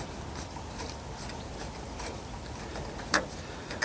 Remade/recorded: recorded